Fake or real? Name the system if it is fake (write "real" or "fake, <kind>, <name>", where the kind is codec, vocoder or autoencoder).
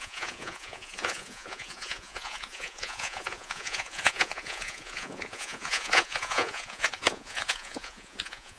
fake, vocoder, Vocos